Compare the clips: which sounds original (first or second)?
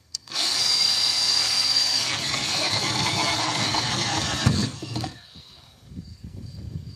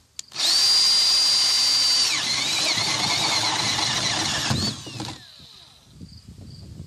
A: second